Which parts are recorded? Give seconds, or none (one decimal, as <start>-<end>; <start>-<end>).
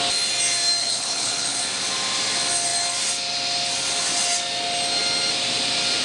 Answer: 0.0-0.8; 1.6-6.0